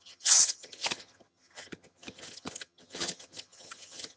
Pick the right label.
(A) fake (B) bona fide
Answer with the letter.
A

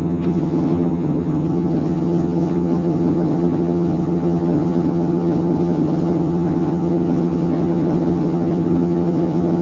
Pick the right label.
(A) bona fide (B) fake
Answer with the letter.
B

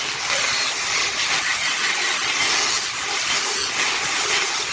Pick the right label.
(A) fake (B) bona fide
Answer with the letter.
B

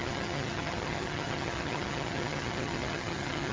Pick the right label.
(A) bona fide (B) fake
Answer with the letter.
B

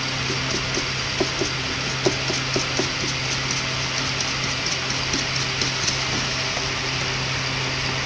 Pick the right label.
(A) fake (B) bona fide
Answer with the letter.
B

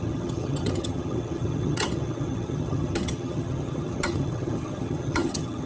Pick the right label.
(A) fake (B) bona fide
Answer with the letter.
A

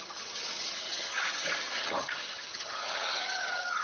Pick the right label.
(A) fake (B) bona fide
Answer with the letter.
A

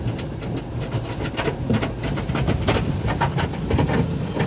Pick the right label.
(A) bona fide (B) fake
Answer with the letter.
A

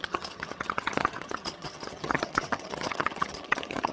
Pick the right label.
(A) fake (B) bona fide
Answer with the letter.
A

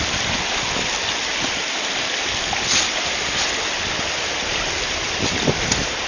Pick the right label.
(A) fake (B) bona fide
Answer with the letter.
B